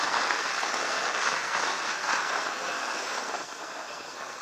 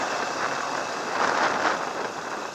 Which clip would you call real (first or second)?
second